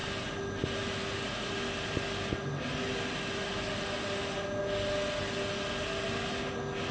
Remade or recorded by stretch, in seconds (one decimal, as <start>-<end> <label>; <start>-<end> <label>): 0.0-6.9 recorded